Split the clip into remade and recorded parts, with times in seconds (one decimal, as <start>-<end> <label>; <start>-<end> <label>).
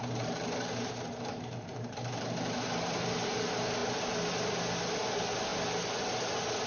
0.0-3.4 remade; 3.4-6.7 recorded